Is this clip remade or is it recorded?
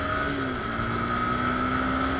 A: recorded